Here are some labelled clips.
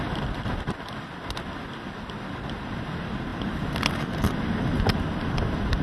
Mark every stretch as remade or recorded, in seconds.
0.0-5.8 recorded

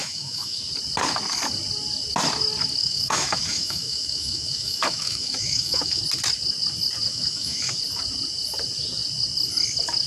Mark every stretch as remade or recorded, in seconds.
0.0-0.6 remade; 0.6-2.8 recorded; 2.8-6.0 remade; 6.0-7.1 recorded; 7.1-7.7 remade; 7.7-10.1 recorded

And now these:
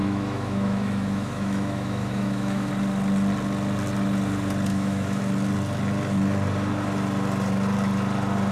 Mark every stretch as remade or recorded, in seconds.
0.0-2.7 remade; 2.7-4.7 recorded; 4.7-5.2 remade; 5.2-8.5 recorded